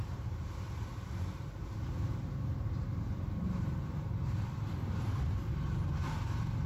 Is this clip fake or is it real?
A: fake